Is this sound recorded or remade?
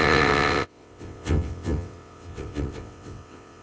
remade